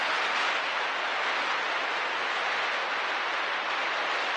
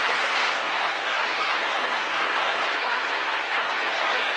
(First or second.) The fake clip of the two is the second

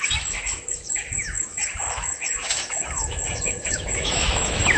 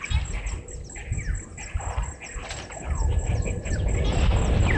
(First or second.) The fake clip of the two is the first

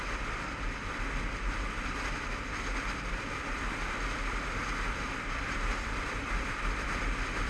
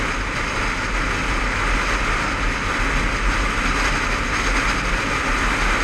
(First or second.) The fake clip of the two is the first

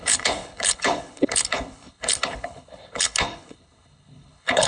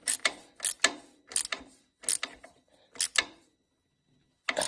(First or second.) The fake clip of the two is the first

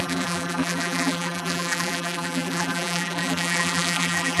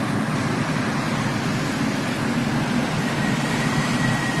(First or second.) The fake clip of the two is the first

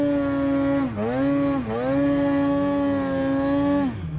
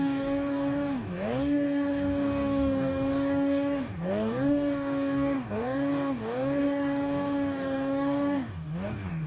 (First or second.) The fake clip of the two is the second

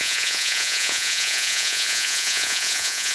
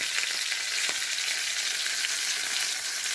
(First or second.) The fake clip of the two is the first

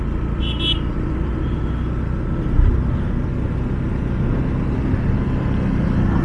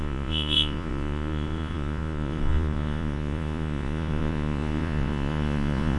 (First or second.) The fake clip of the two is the second